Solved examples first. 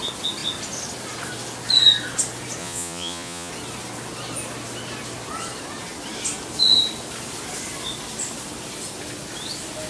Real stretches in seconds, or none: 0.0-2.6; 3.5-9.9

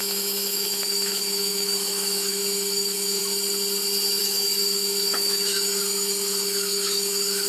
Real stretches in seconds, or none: 3.2-4.2